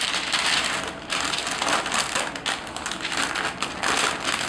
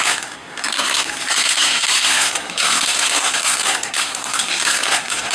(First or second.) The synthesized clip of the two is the second